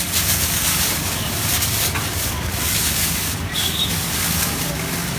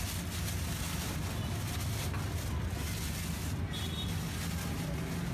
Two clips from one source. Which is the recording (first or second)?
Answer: second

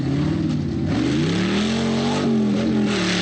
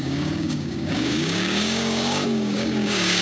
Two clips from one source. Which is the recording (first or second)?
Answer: first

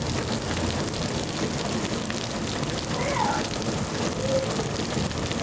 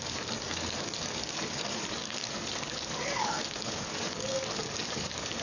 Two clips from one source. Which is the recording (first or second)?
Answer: first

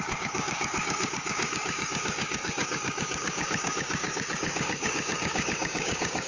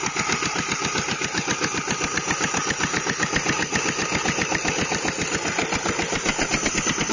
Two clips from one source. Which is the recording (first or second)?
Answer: second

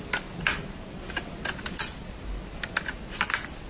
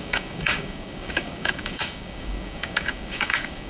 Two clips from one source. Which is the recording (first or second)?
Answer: first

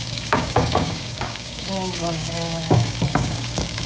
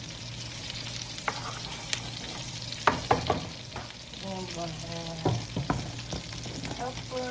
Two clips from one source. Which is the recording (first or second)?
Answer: second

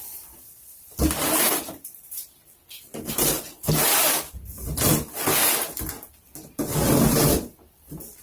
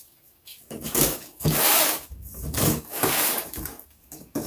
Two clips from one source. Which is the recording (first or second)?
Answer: first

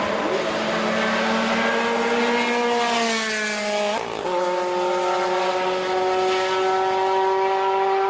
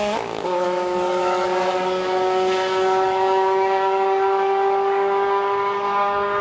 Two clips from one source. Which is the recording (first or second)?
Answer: first